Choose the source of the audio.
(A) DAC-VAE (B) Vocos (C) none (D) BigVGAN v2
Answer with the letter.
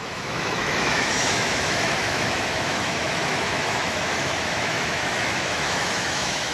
A